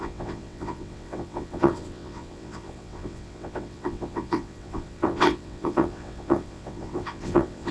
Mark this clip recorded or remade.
remade